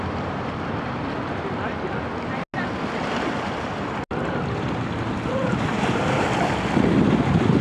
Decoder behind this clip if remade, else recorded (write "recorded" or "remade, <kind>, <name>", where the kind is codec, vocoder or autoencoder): recorded